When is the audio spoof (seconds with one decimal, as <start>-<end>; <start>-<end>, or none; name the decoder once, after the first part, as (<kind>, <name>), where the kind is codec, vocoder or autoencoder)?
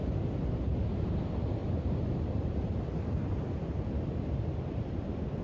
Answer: 1.6-4.8 (vocoder, BigVGAN v2)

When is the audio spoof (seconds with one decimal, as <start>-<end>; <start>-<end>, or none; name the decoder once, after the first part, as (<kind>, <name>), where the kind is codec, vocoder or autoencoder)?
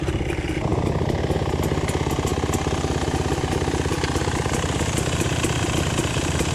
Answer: none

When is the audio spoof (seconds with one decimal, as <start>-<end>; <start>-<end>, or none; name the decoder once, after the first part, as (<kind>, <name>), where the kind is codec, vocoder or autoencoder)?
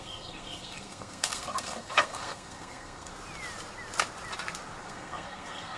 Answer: 0.0-3.1 (codec, SNAC); 4.8-5.8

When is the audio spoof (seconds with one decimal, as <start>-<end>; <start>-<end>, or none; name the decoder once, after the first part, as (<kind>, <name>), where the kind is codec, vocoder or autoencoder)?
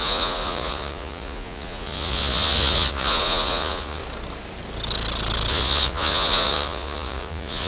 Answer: 0.0-4.0 (vocoder, Vocos); 5.5-7.7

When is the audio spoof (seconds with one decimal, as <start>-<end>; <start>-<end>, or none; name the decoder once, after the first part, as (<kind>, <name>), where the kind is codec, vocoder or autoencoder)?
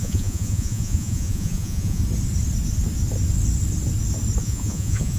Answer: 0.0-2.0 (vocoder, Vocos); 4.4-5.2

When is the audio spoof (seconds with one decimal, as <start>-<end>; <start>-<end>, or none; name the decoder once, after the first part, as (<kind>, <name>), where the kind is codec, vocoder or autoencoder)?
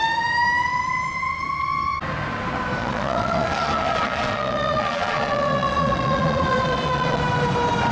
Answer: 2.8-7.2 (vocoder, Vocos)